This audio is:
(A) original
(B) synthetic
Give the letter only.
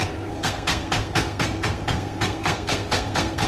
B